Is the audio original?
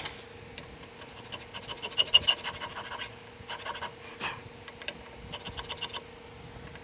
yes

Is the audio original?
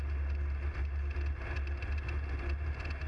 yes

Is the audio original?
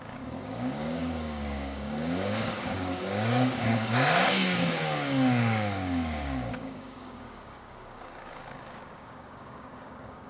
no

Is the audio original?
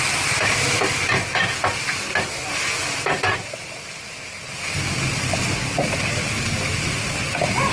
yes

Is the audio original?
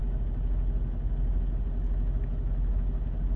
yes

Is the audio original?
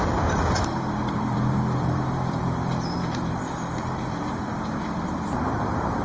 no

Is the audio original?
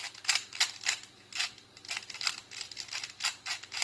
yes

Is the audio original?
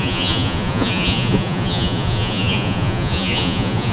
no